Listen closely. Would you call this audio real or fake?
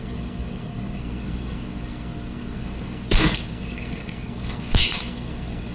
fake